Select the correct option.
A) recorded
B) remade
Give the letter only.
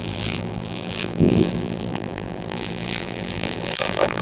B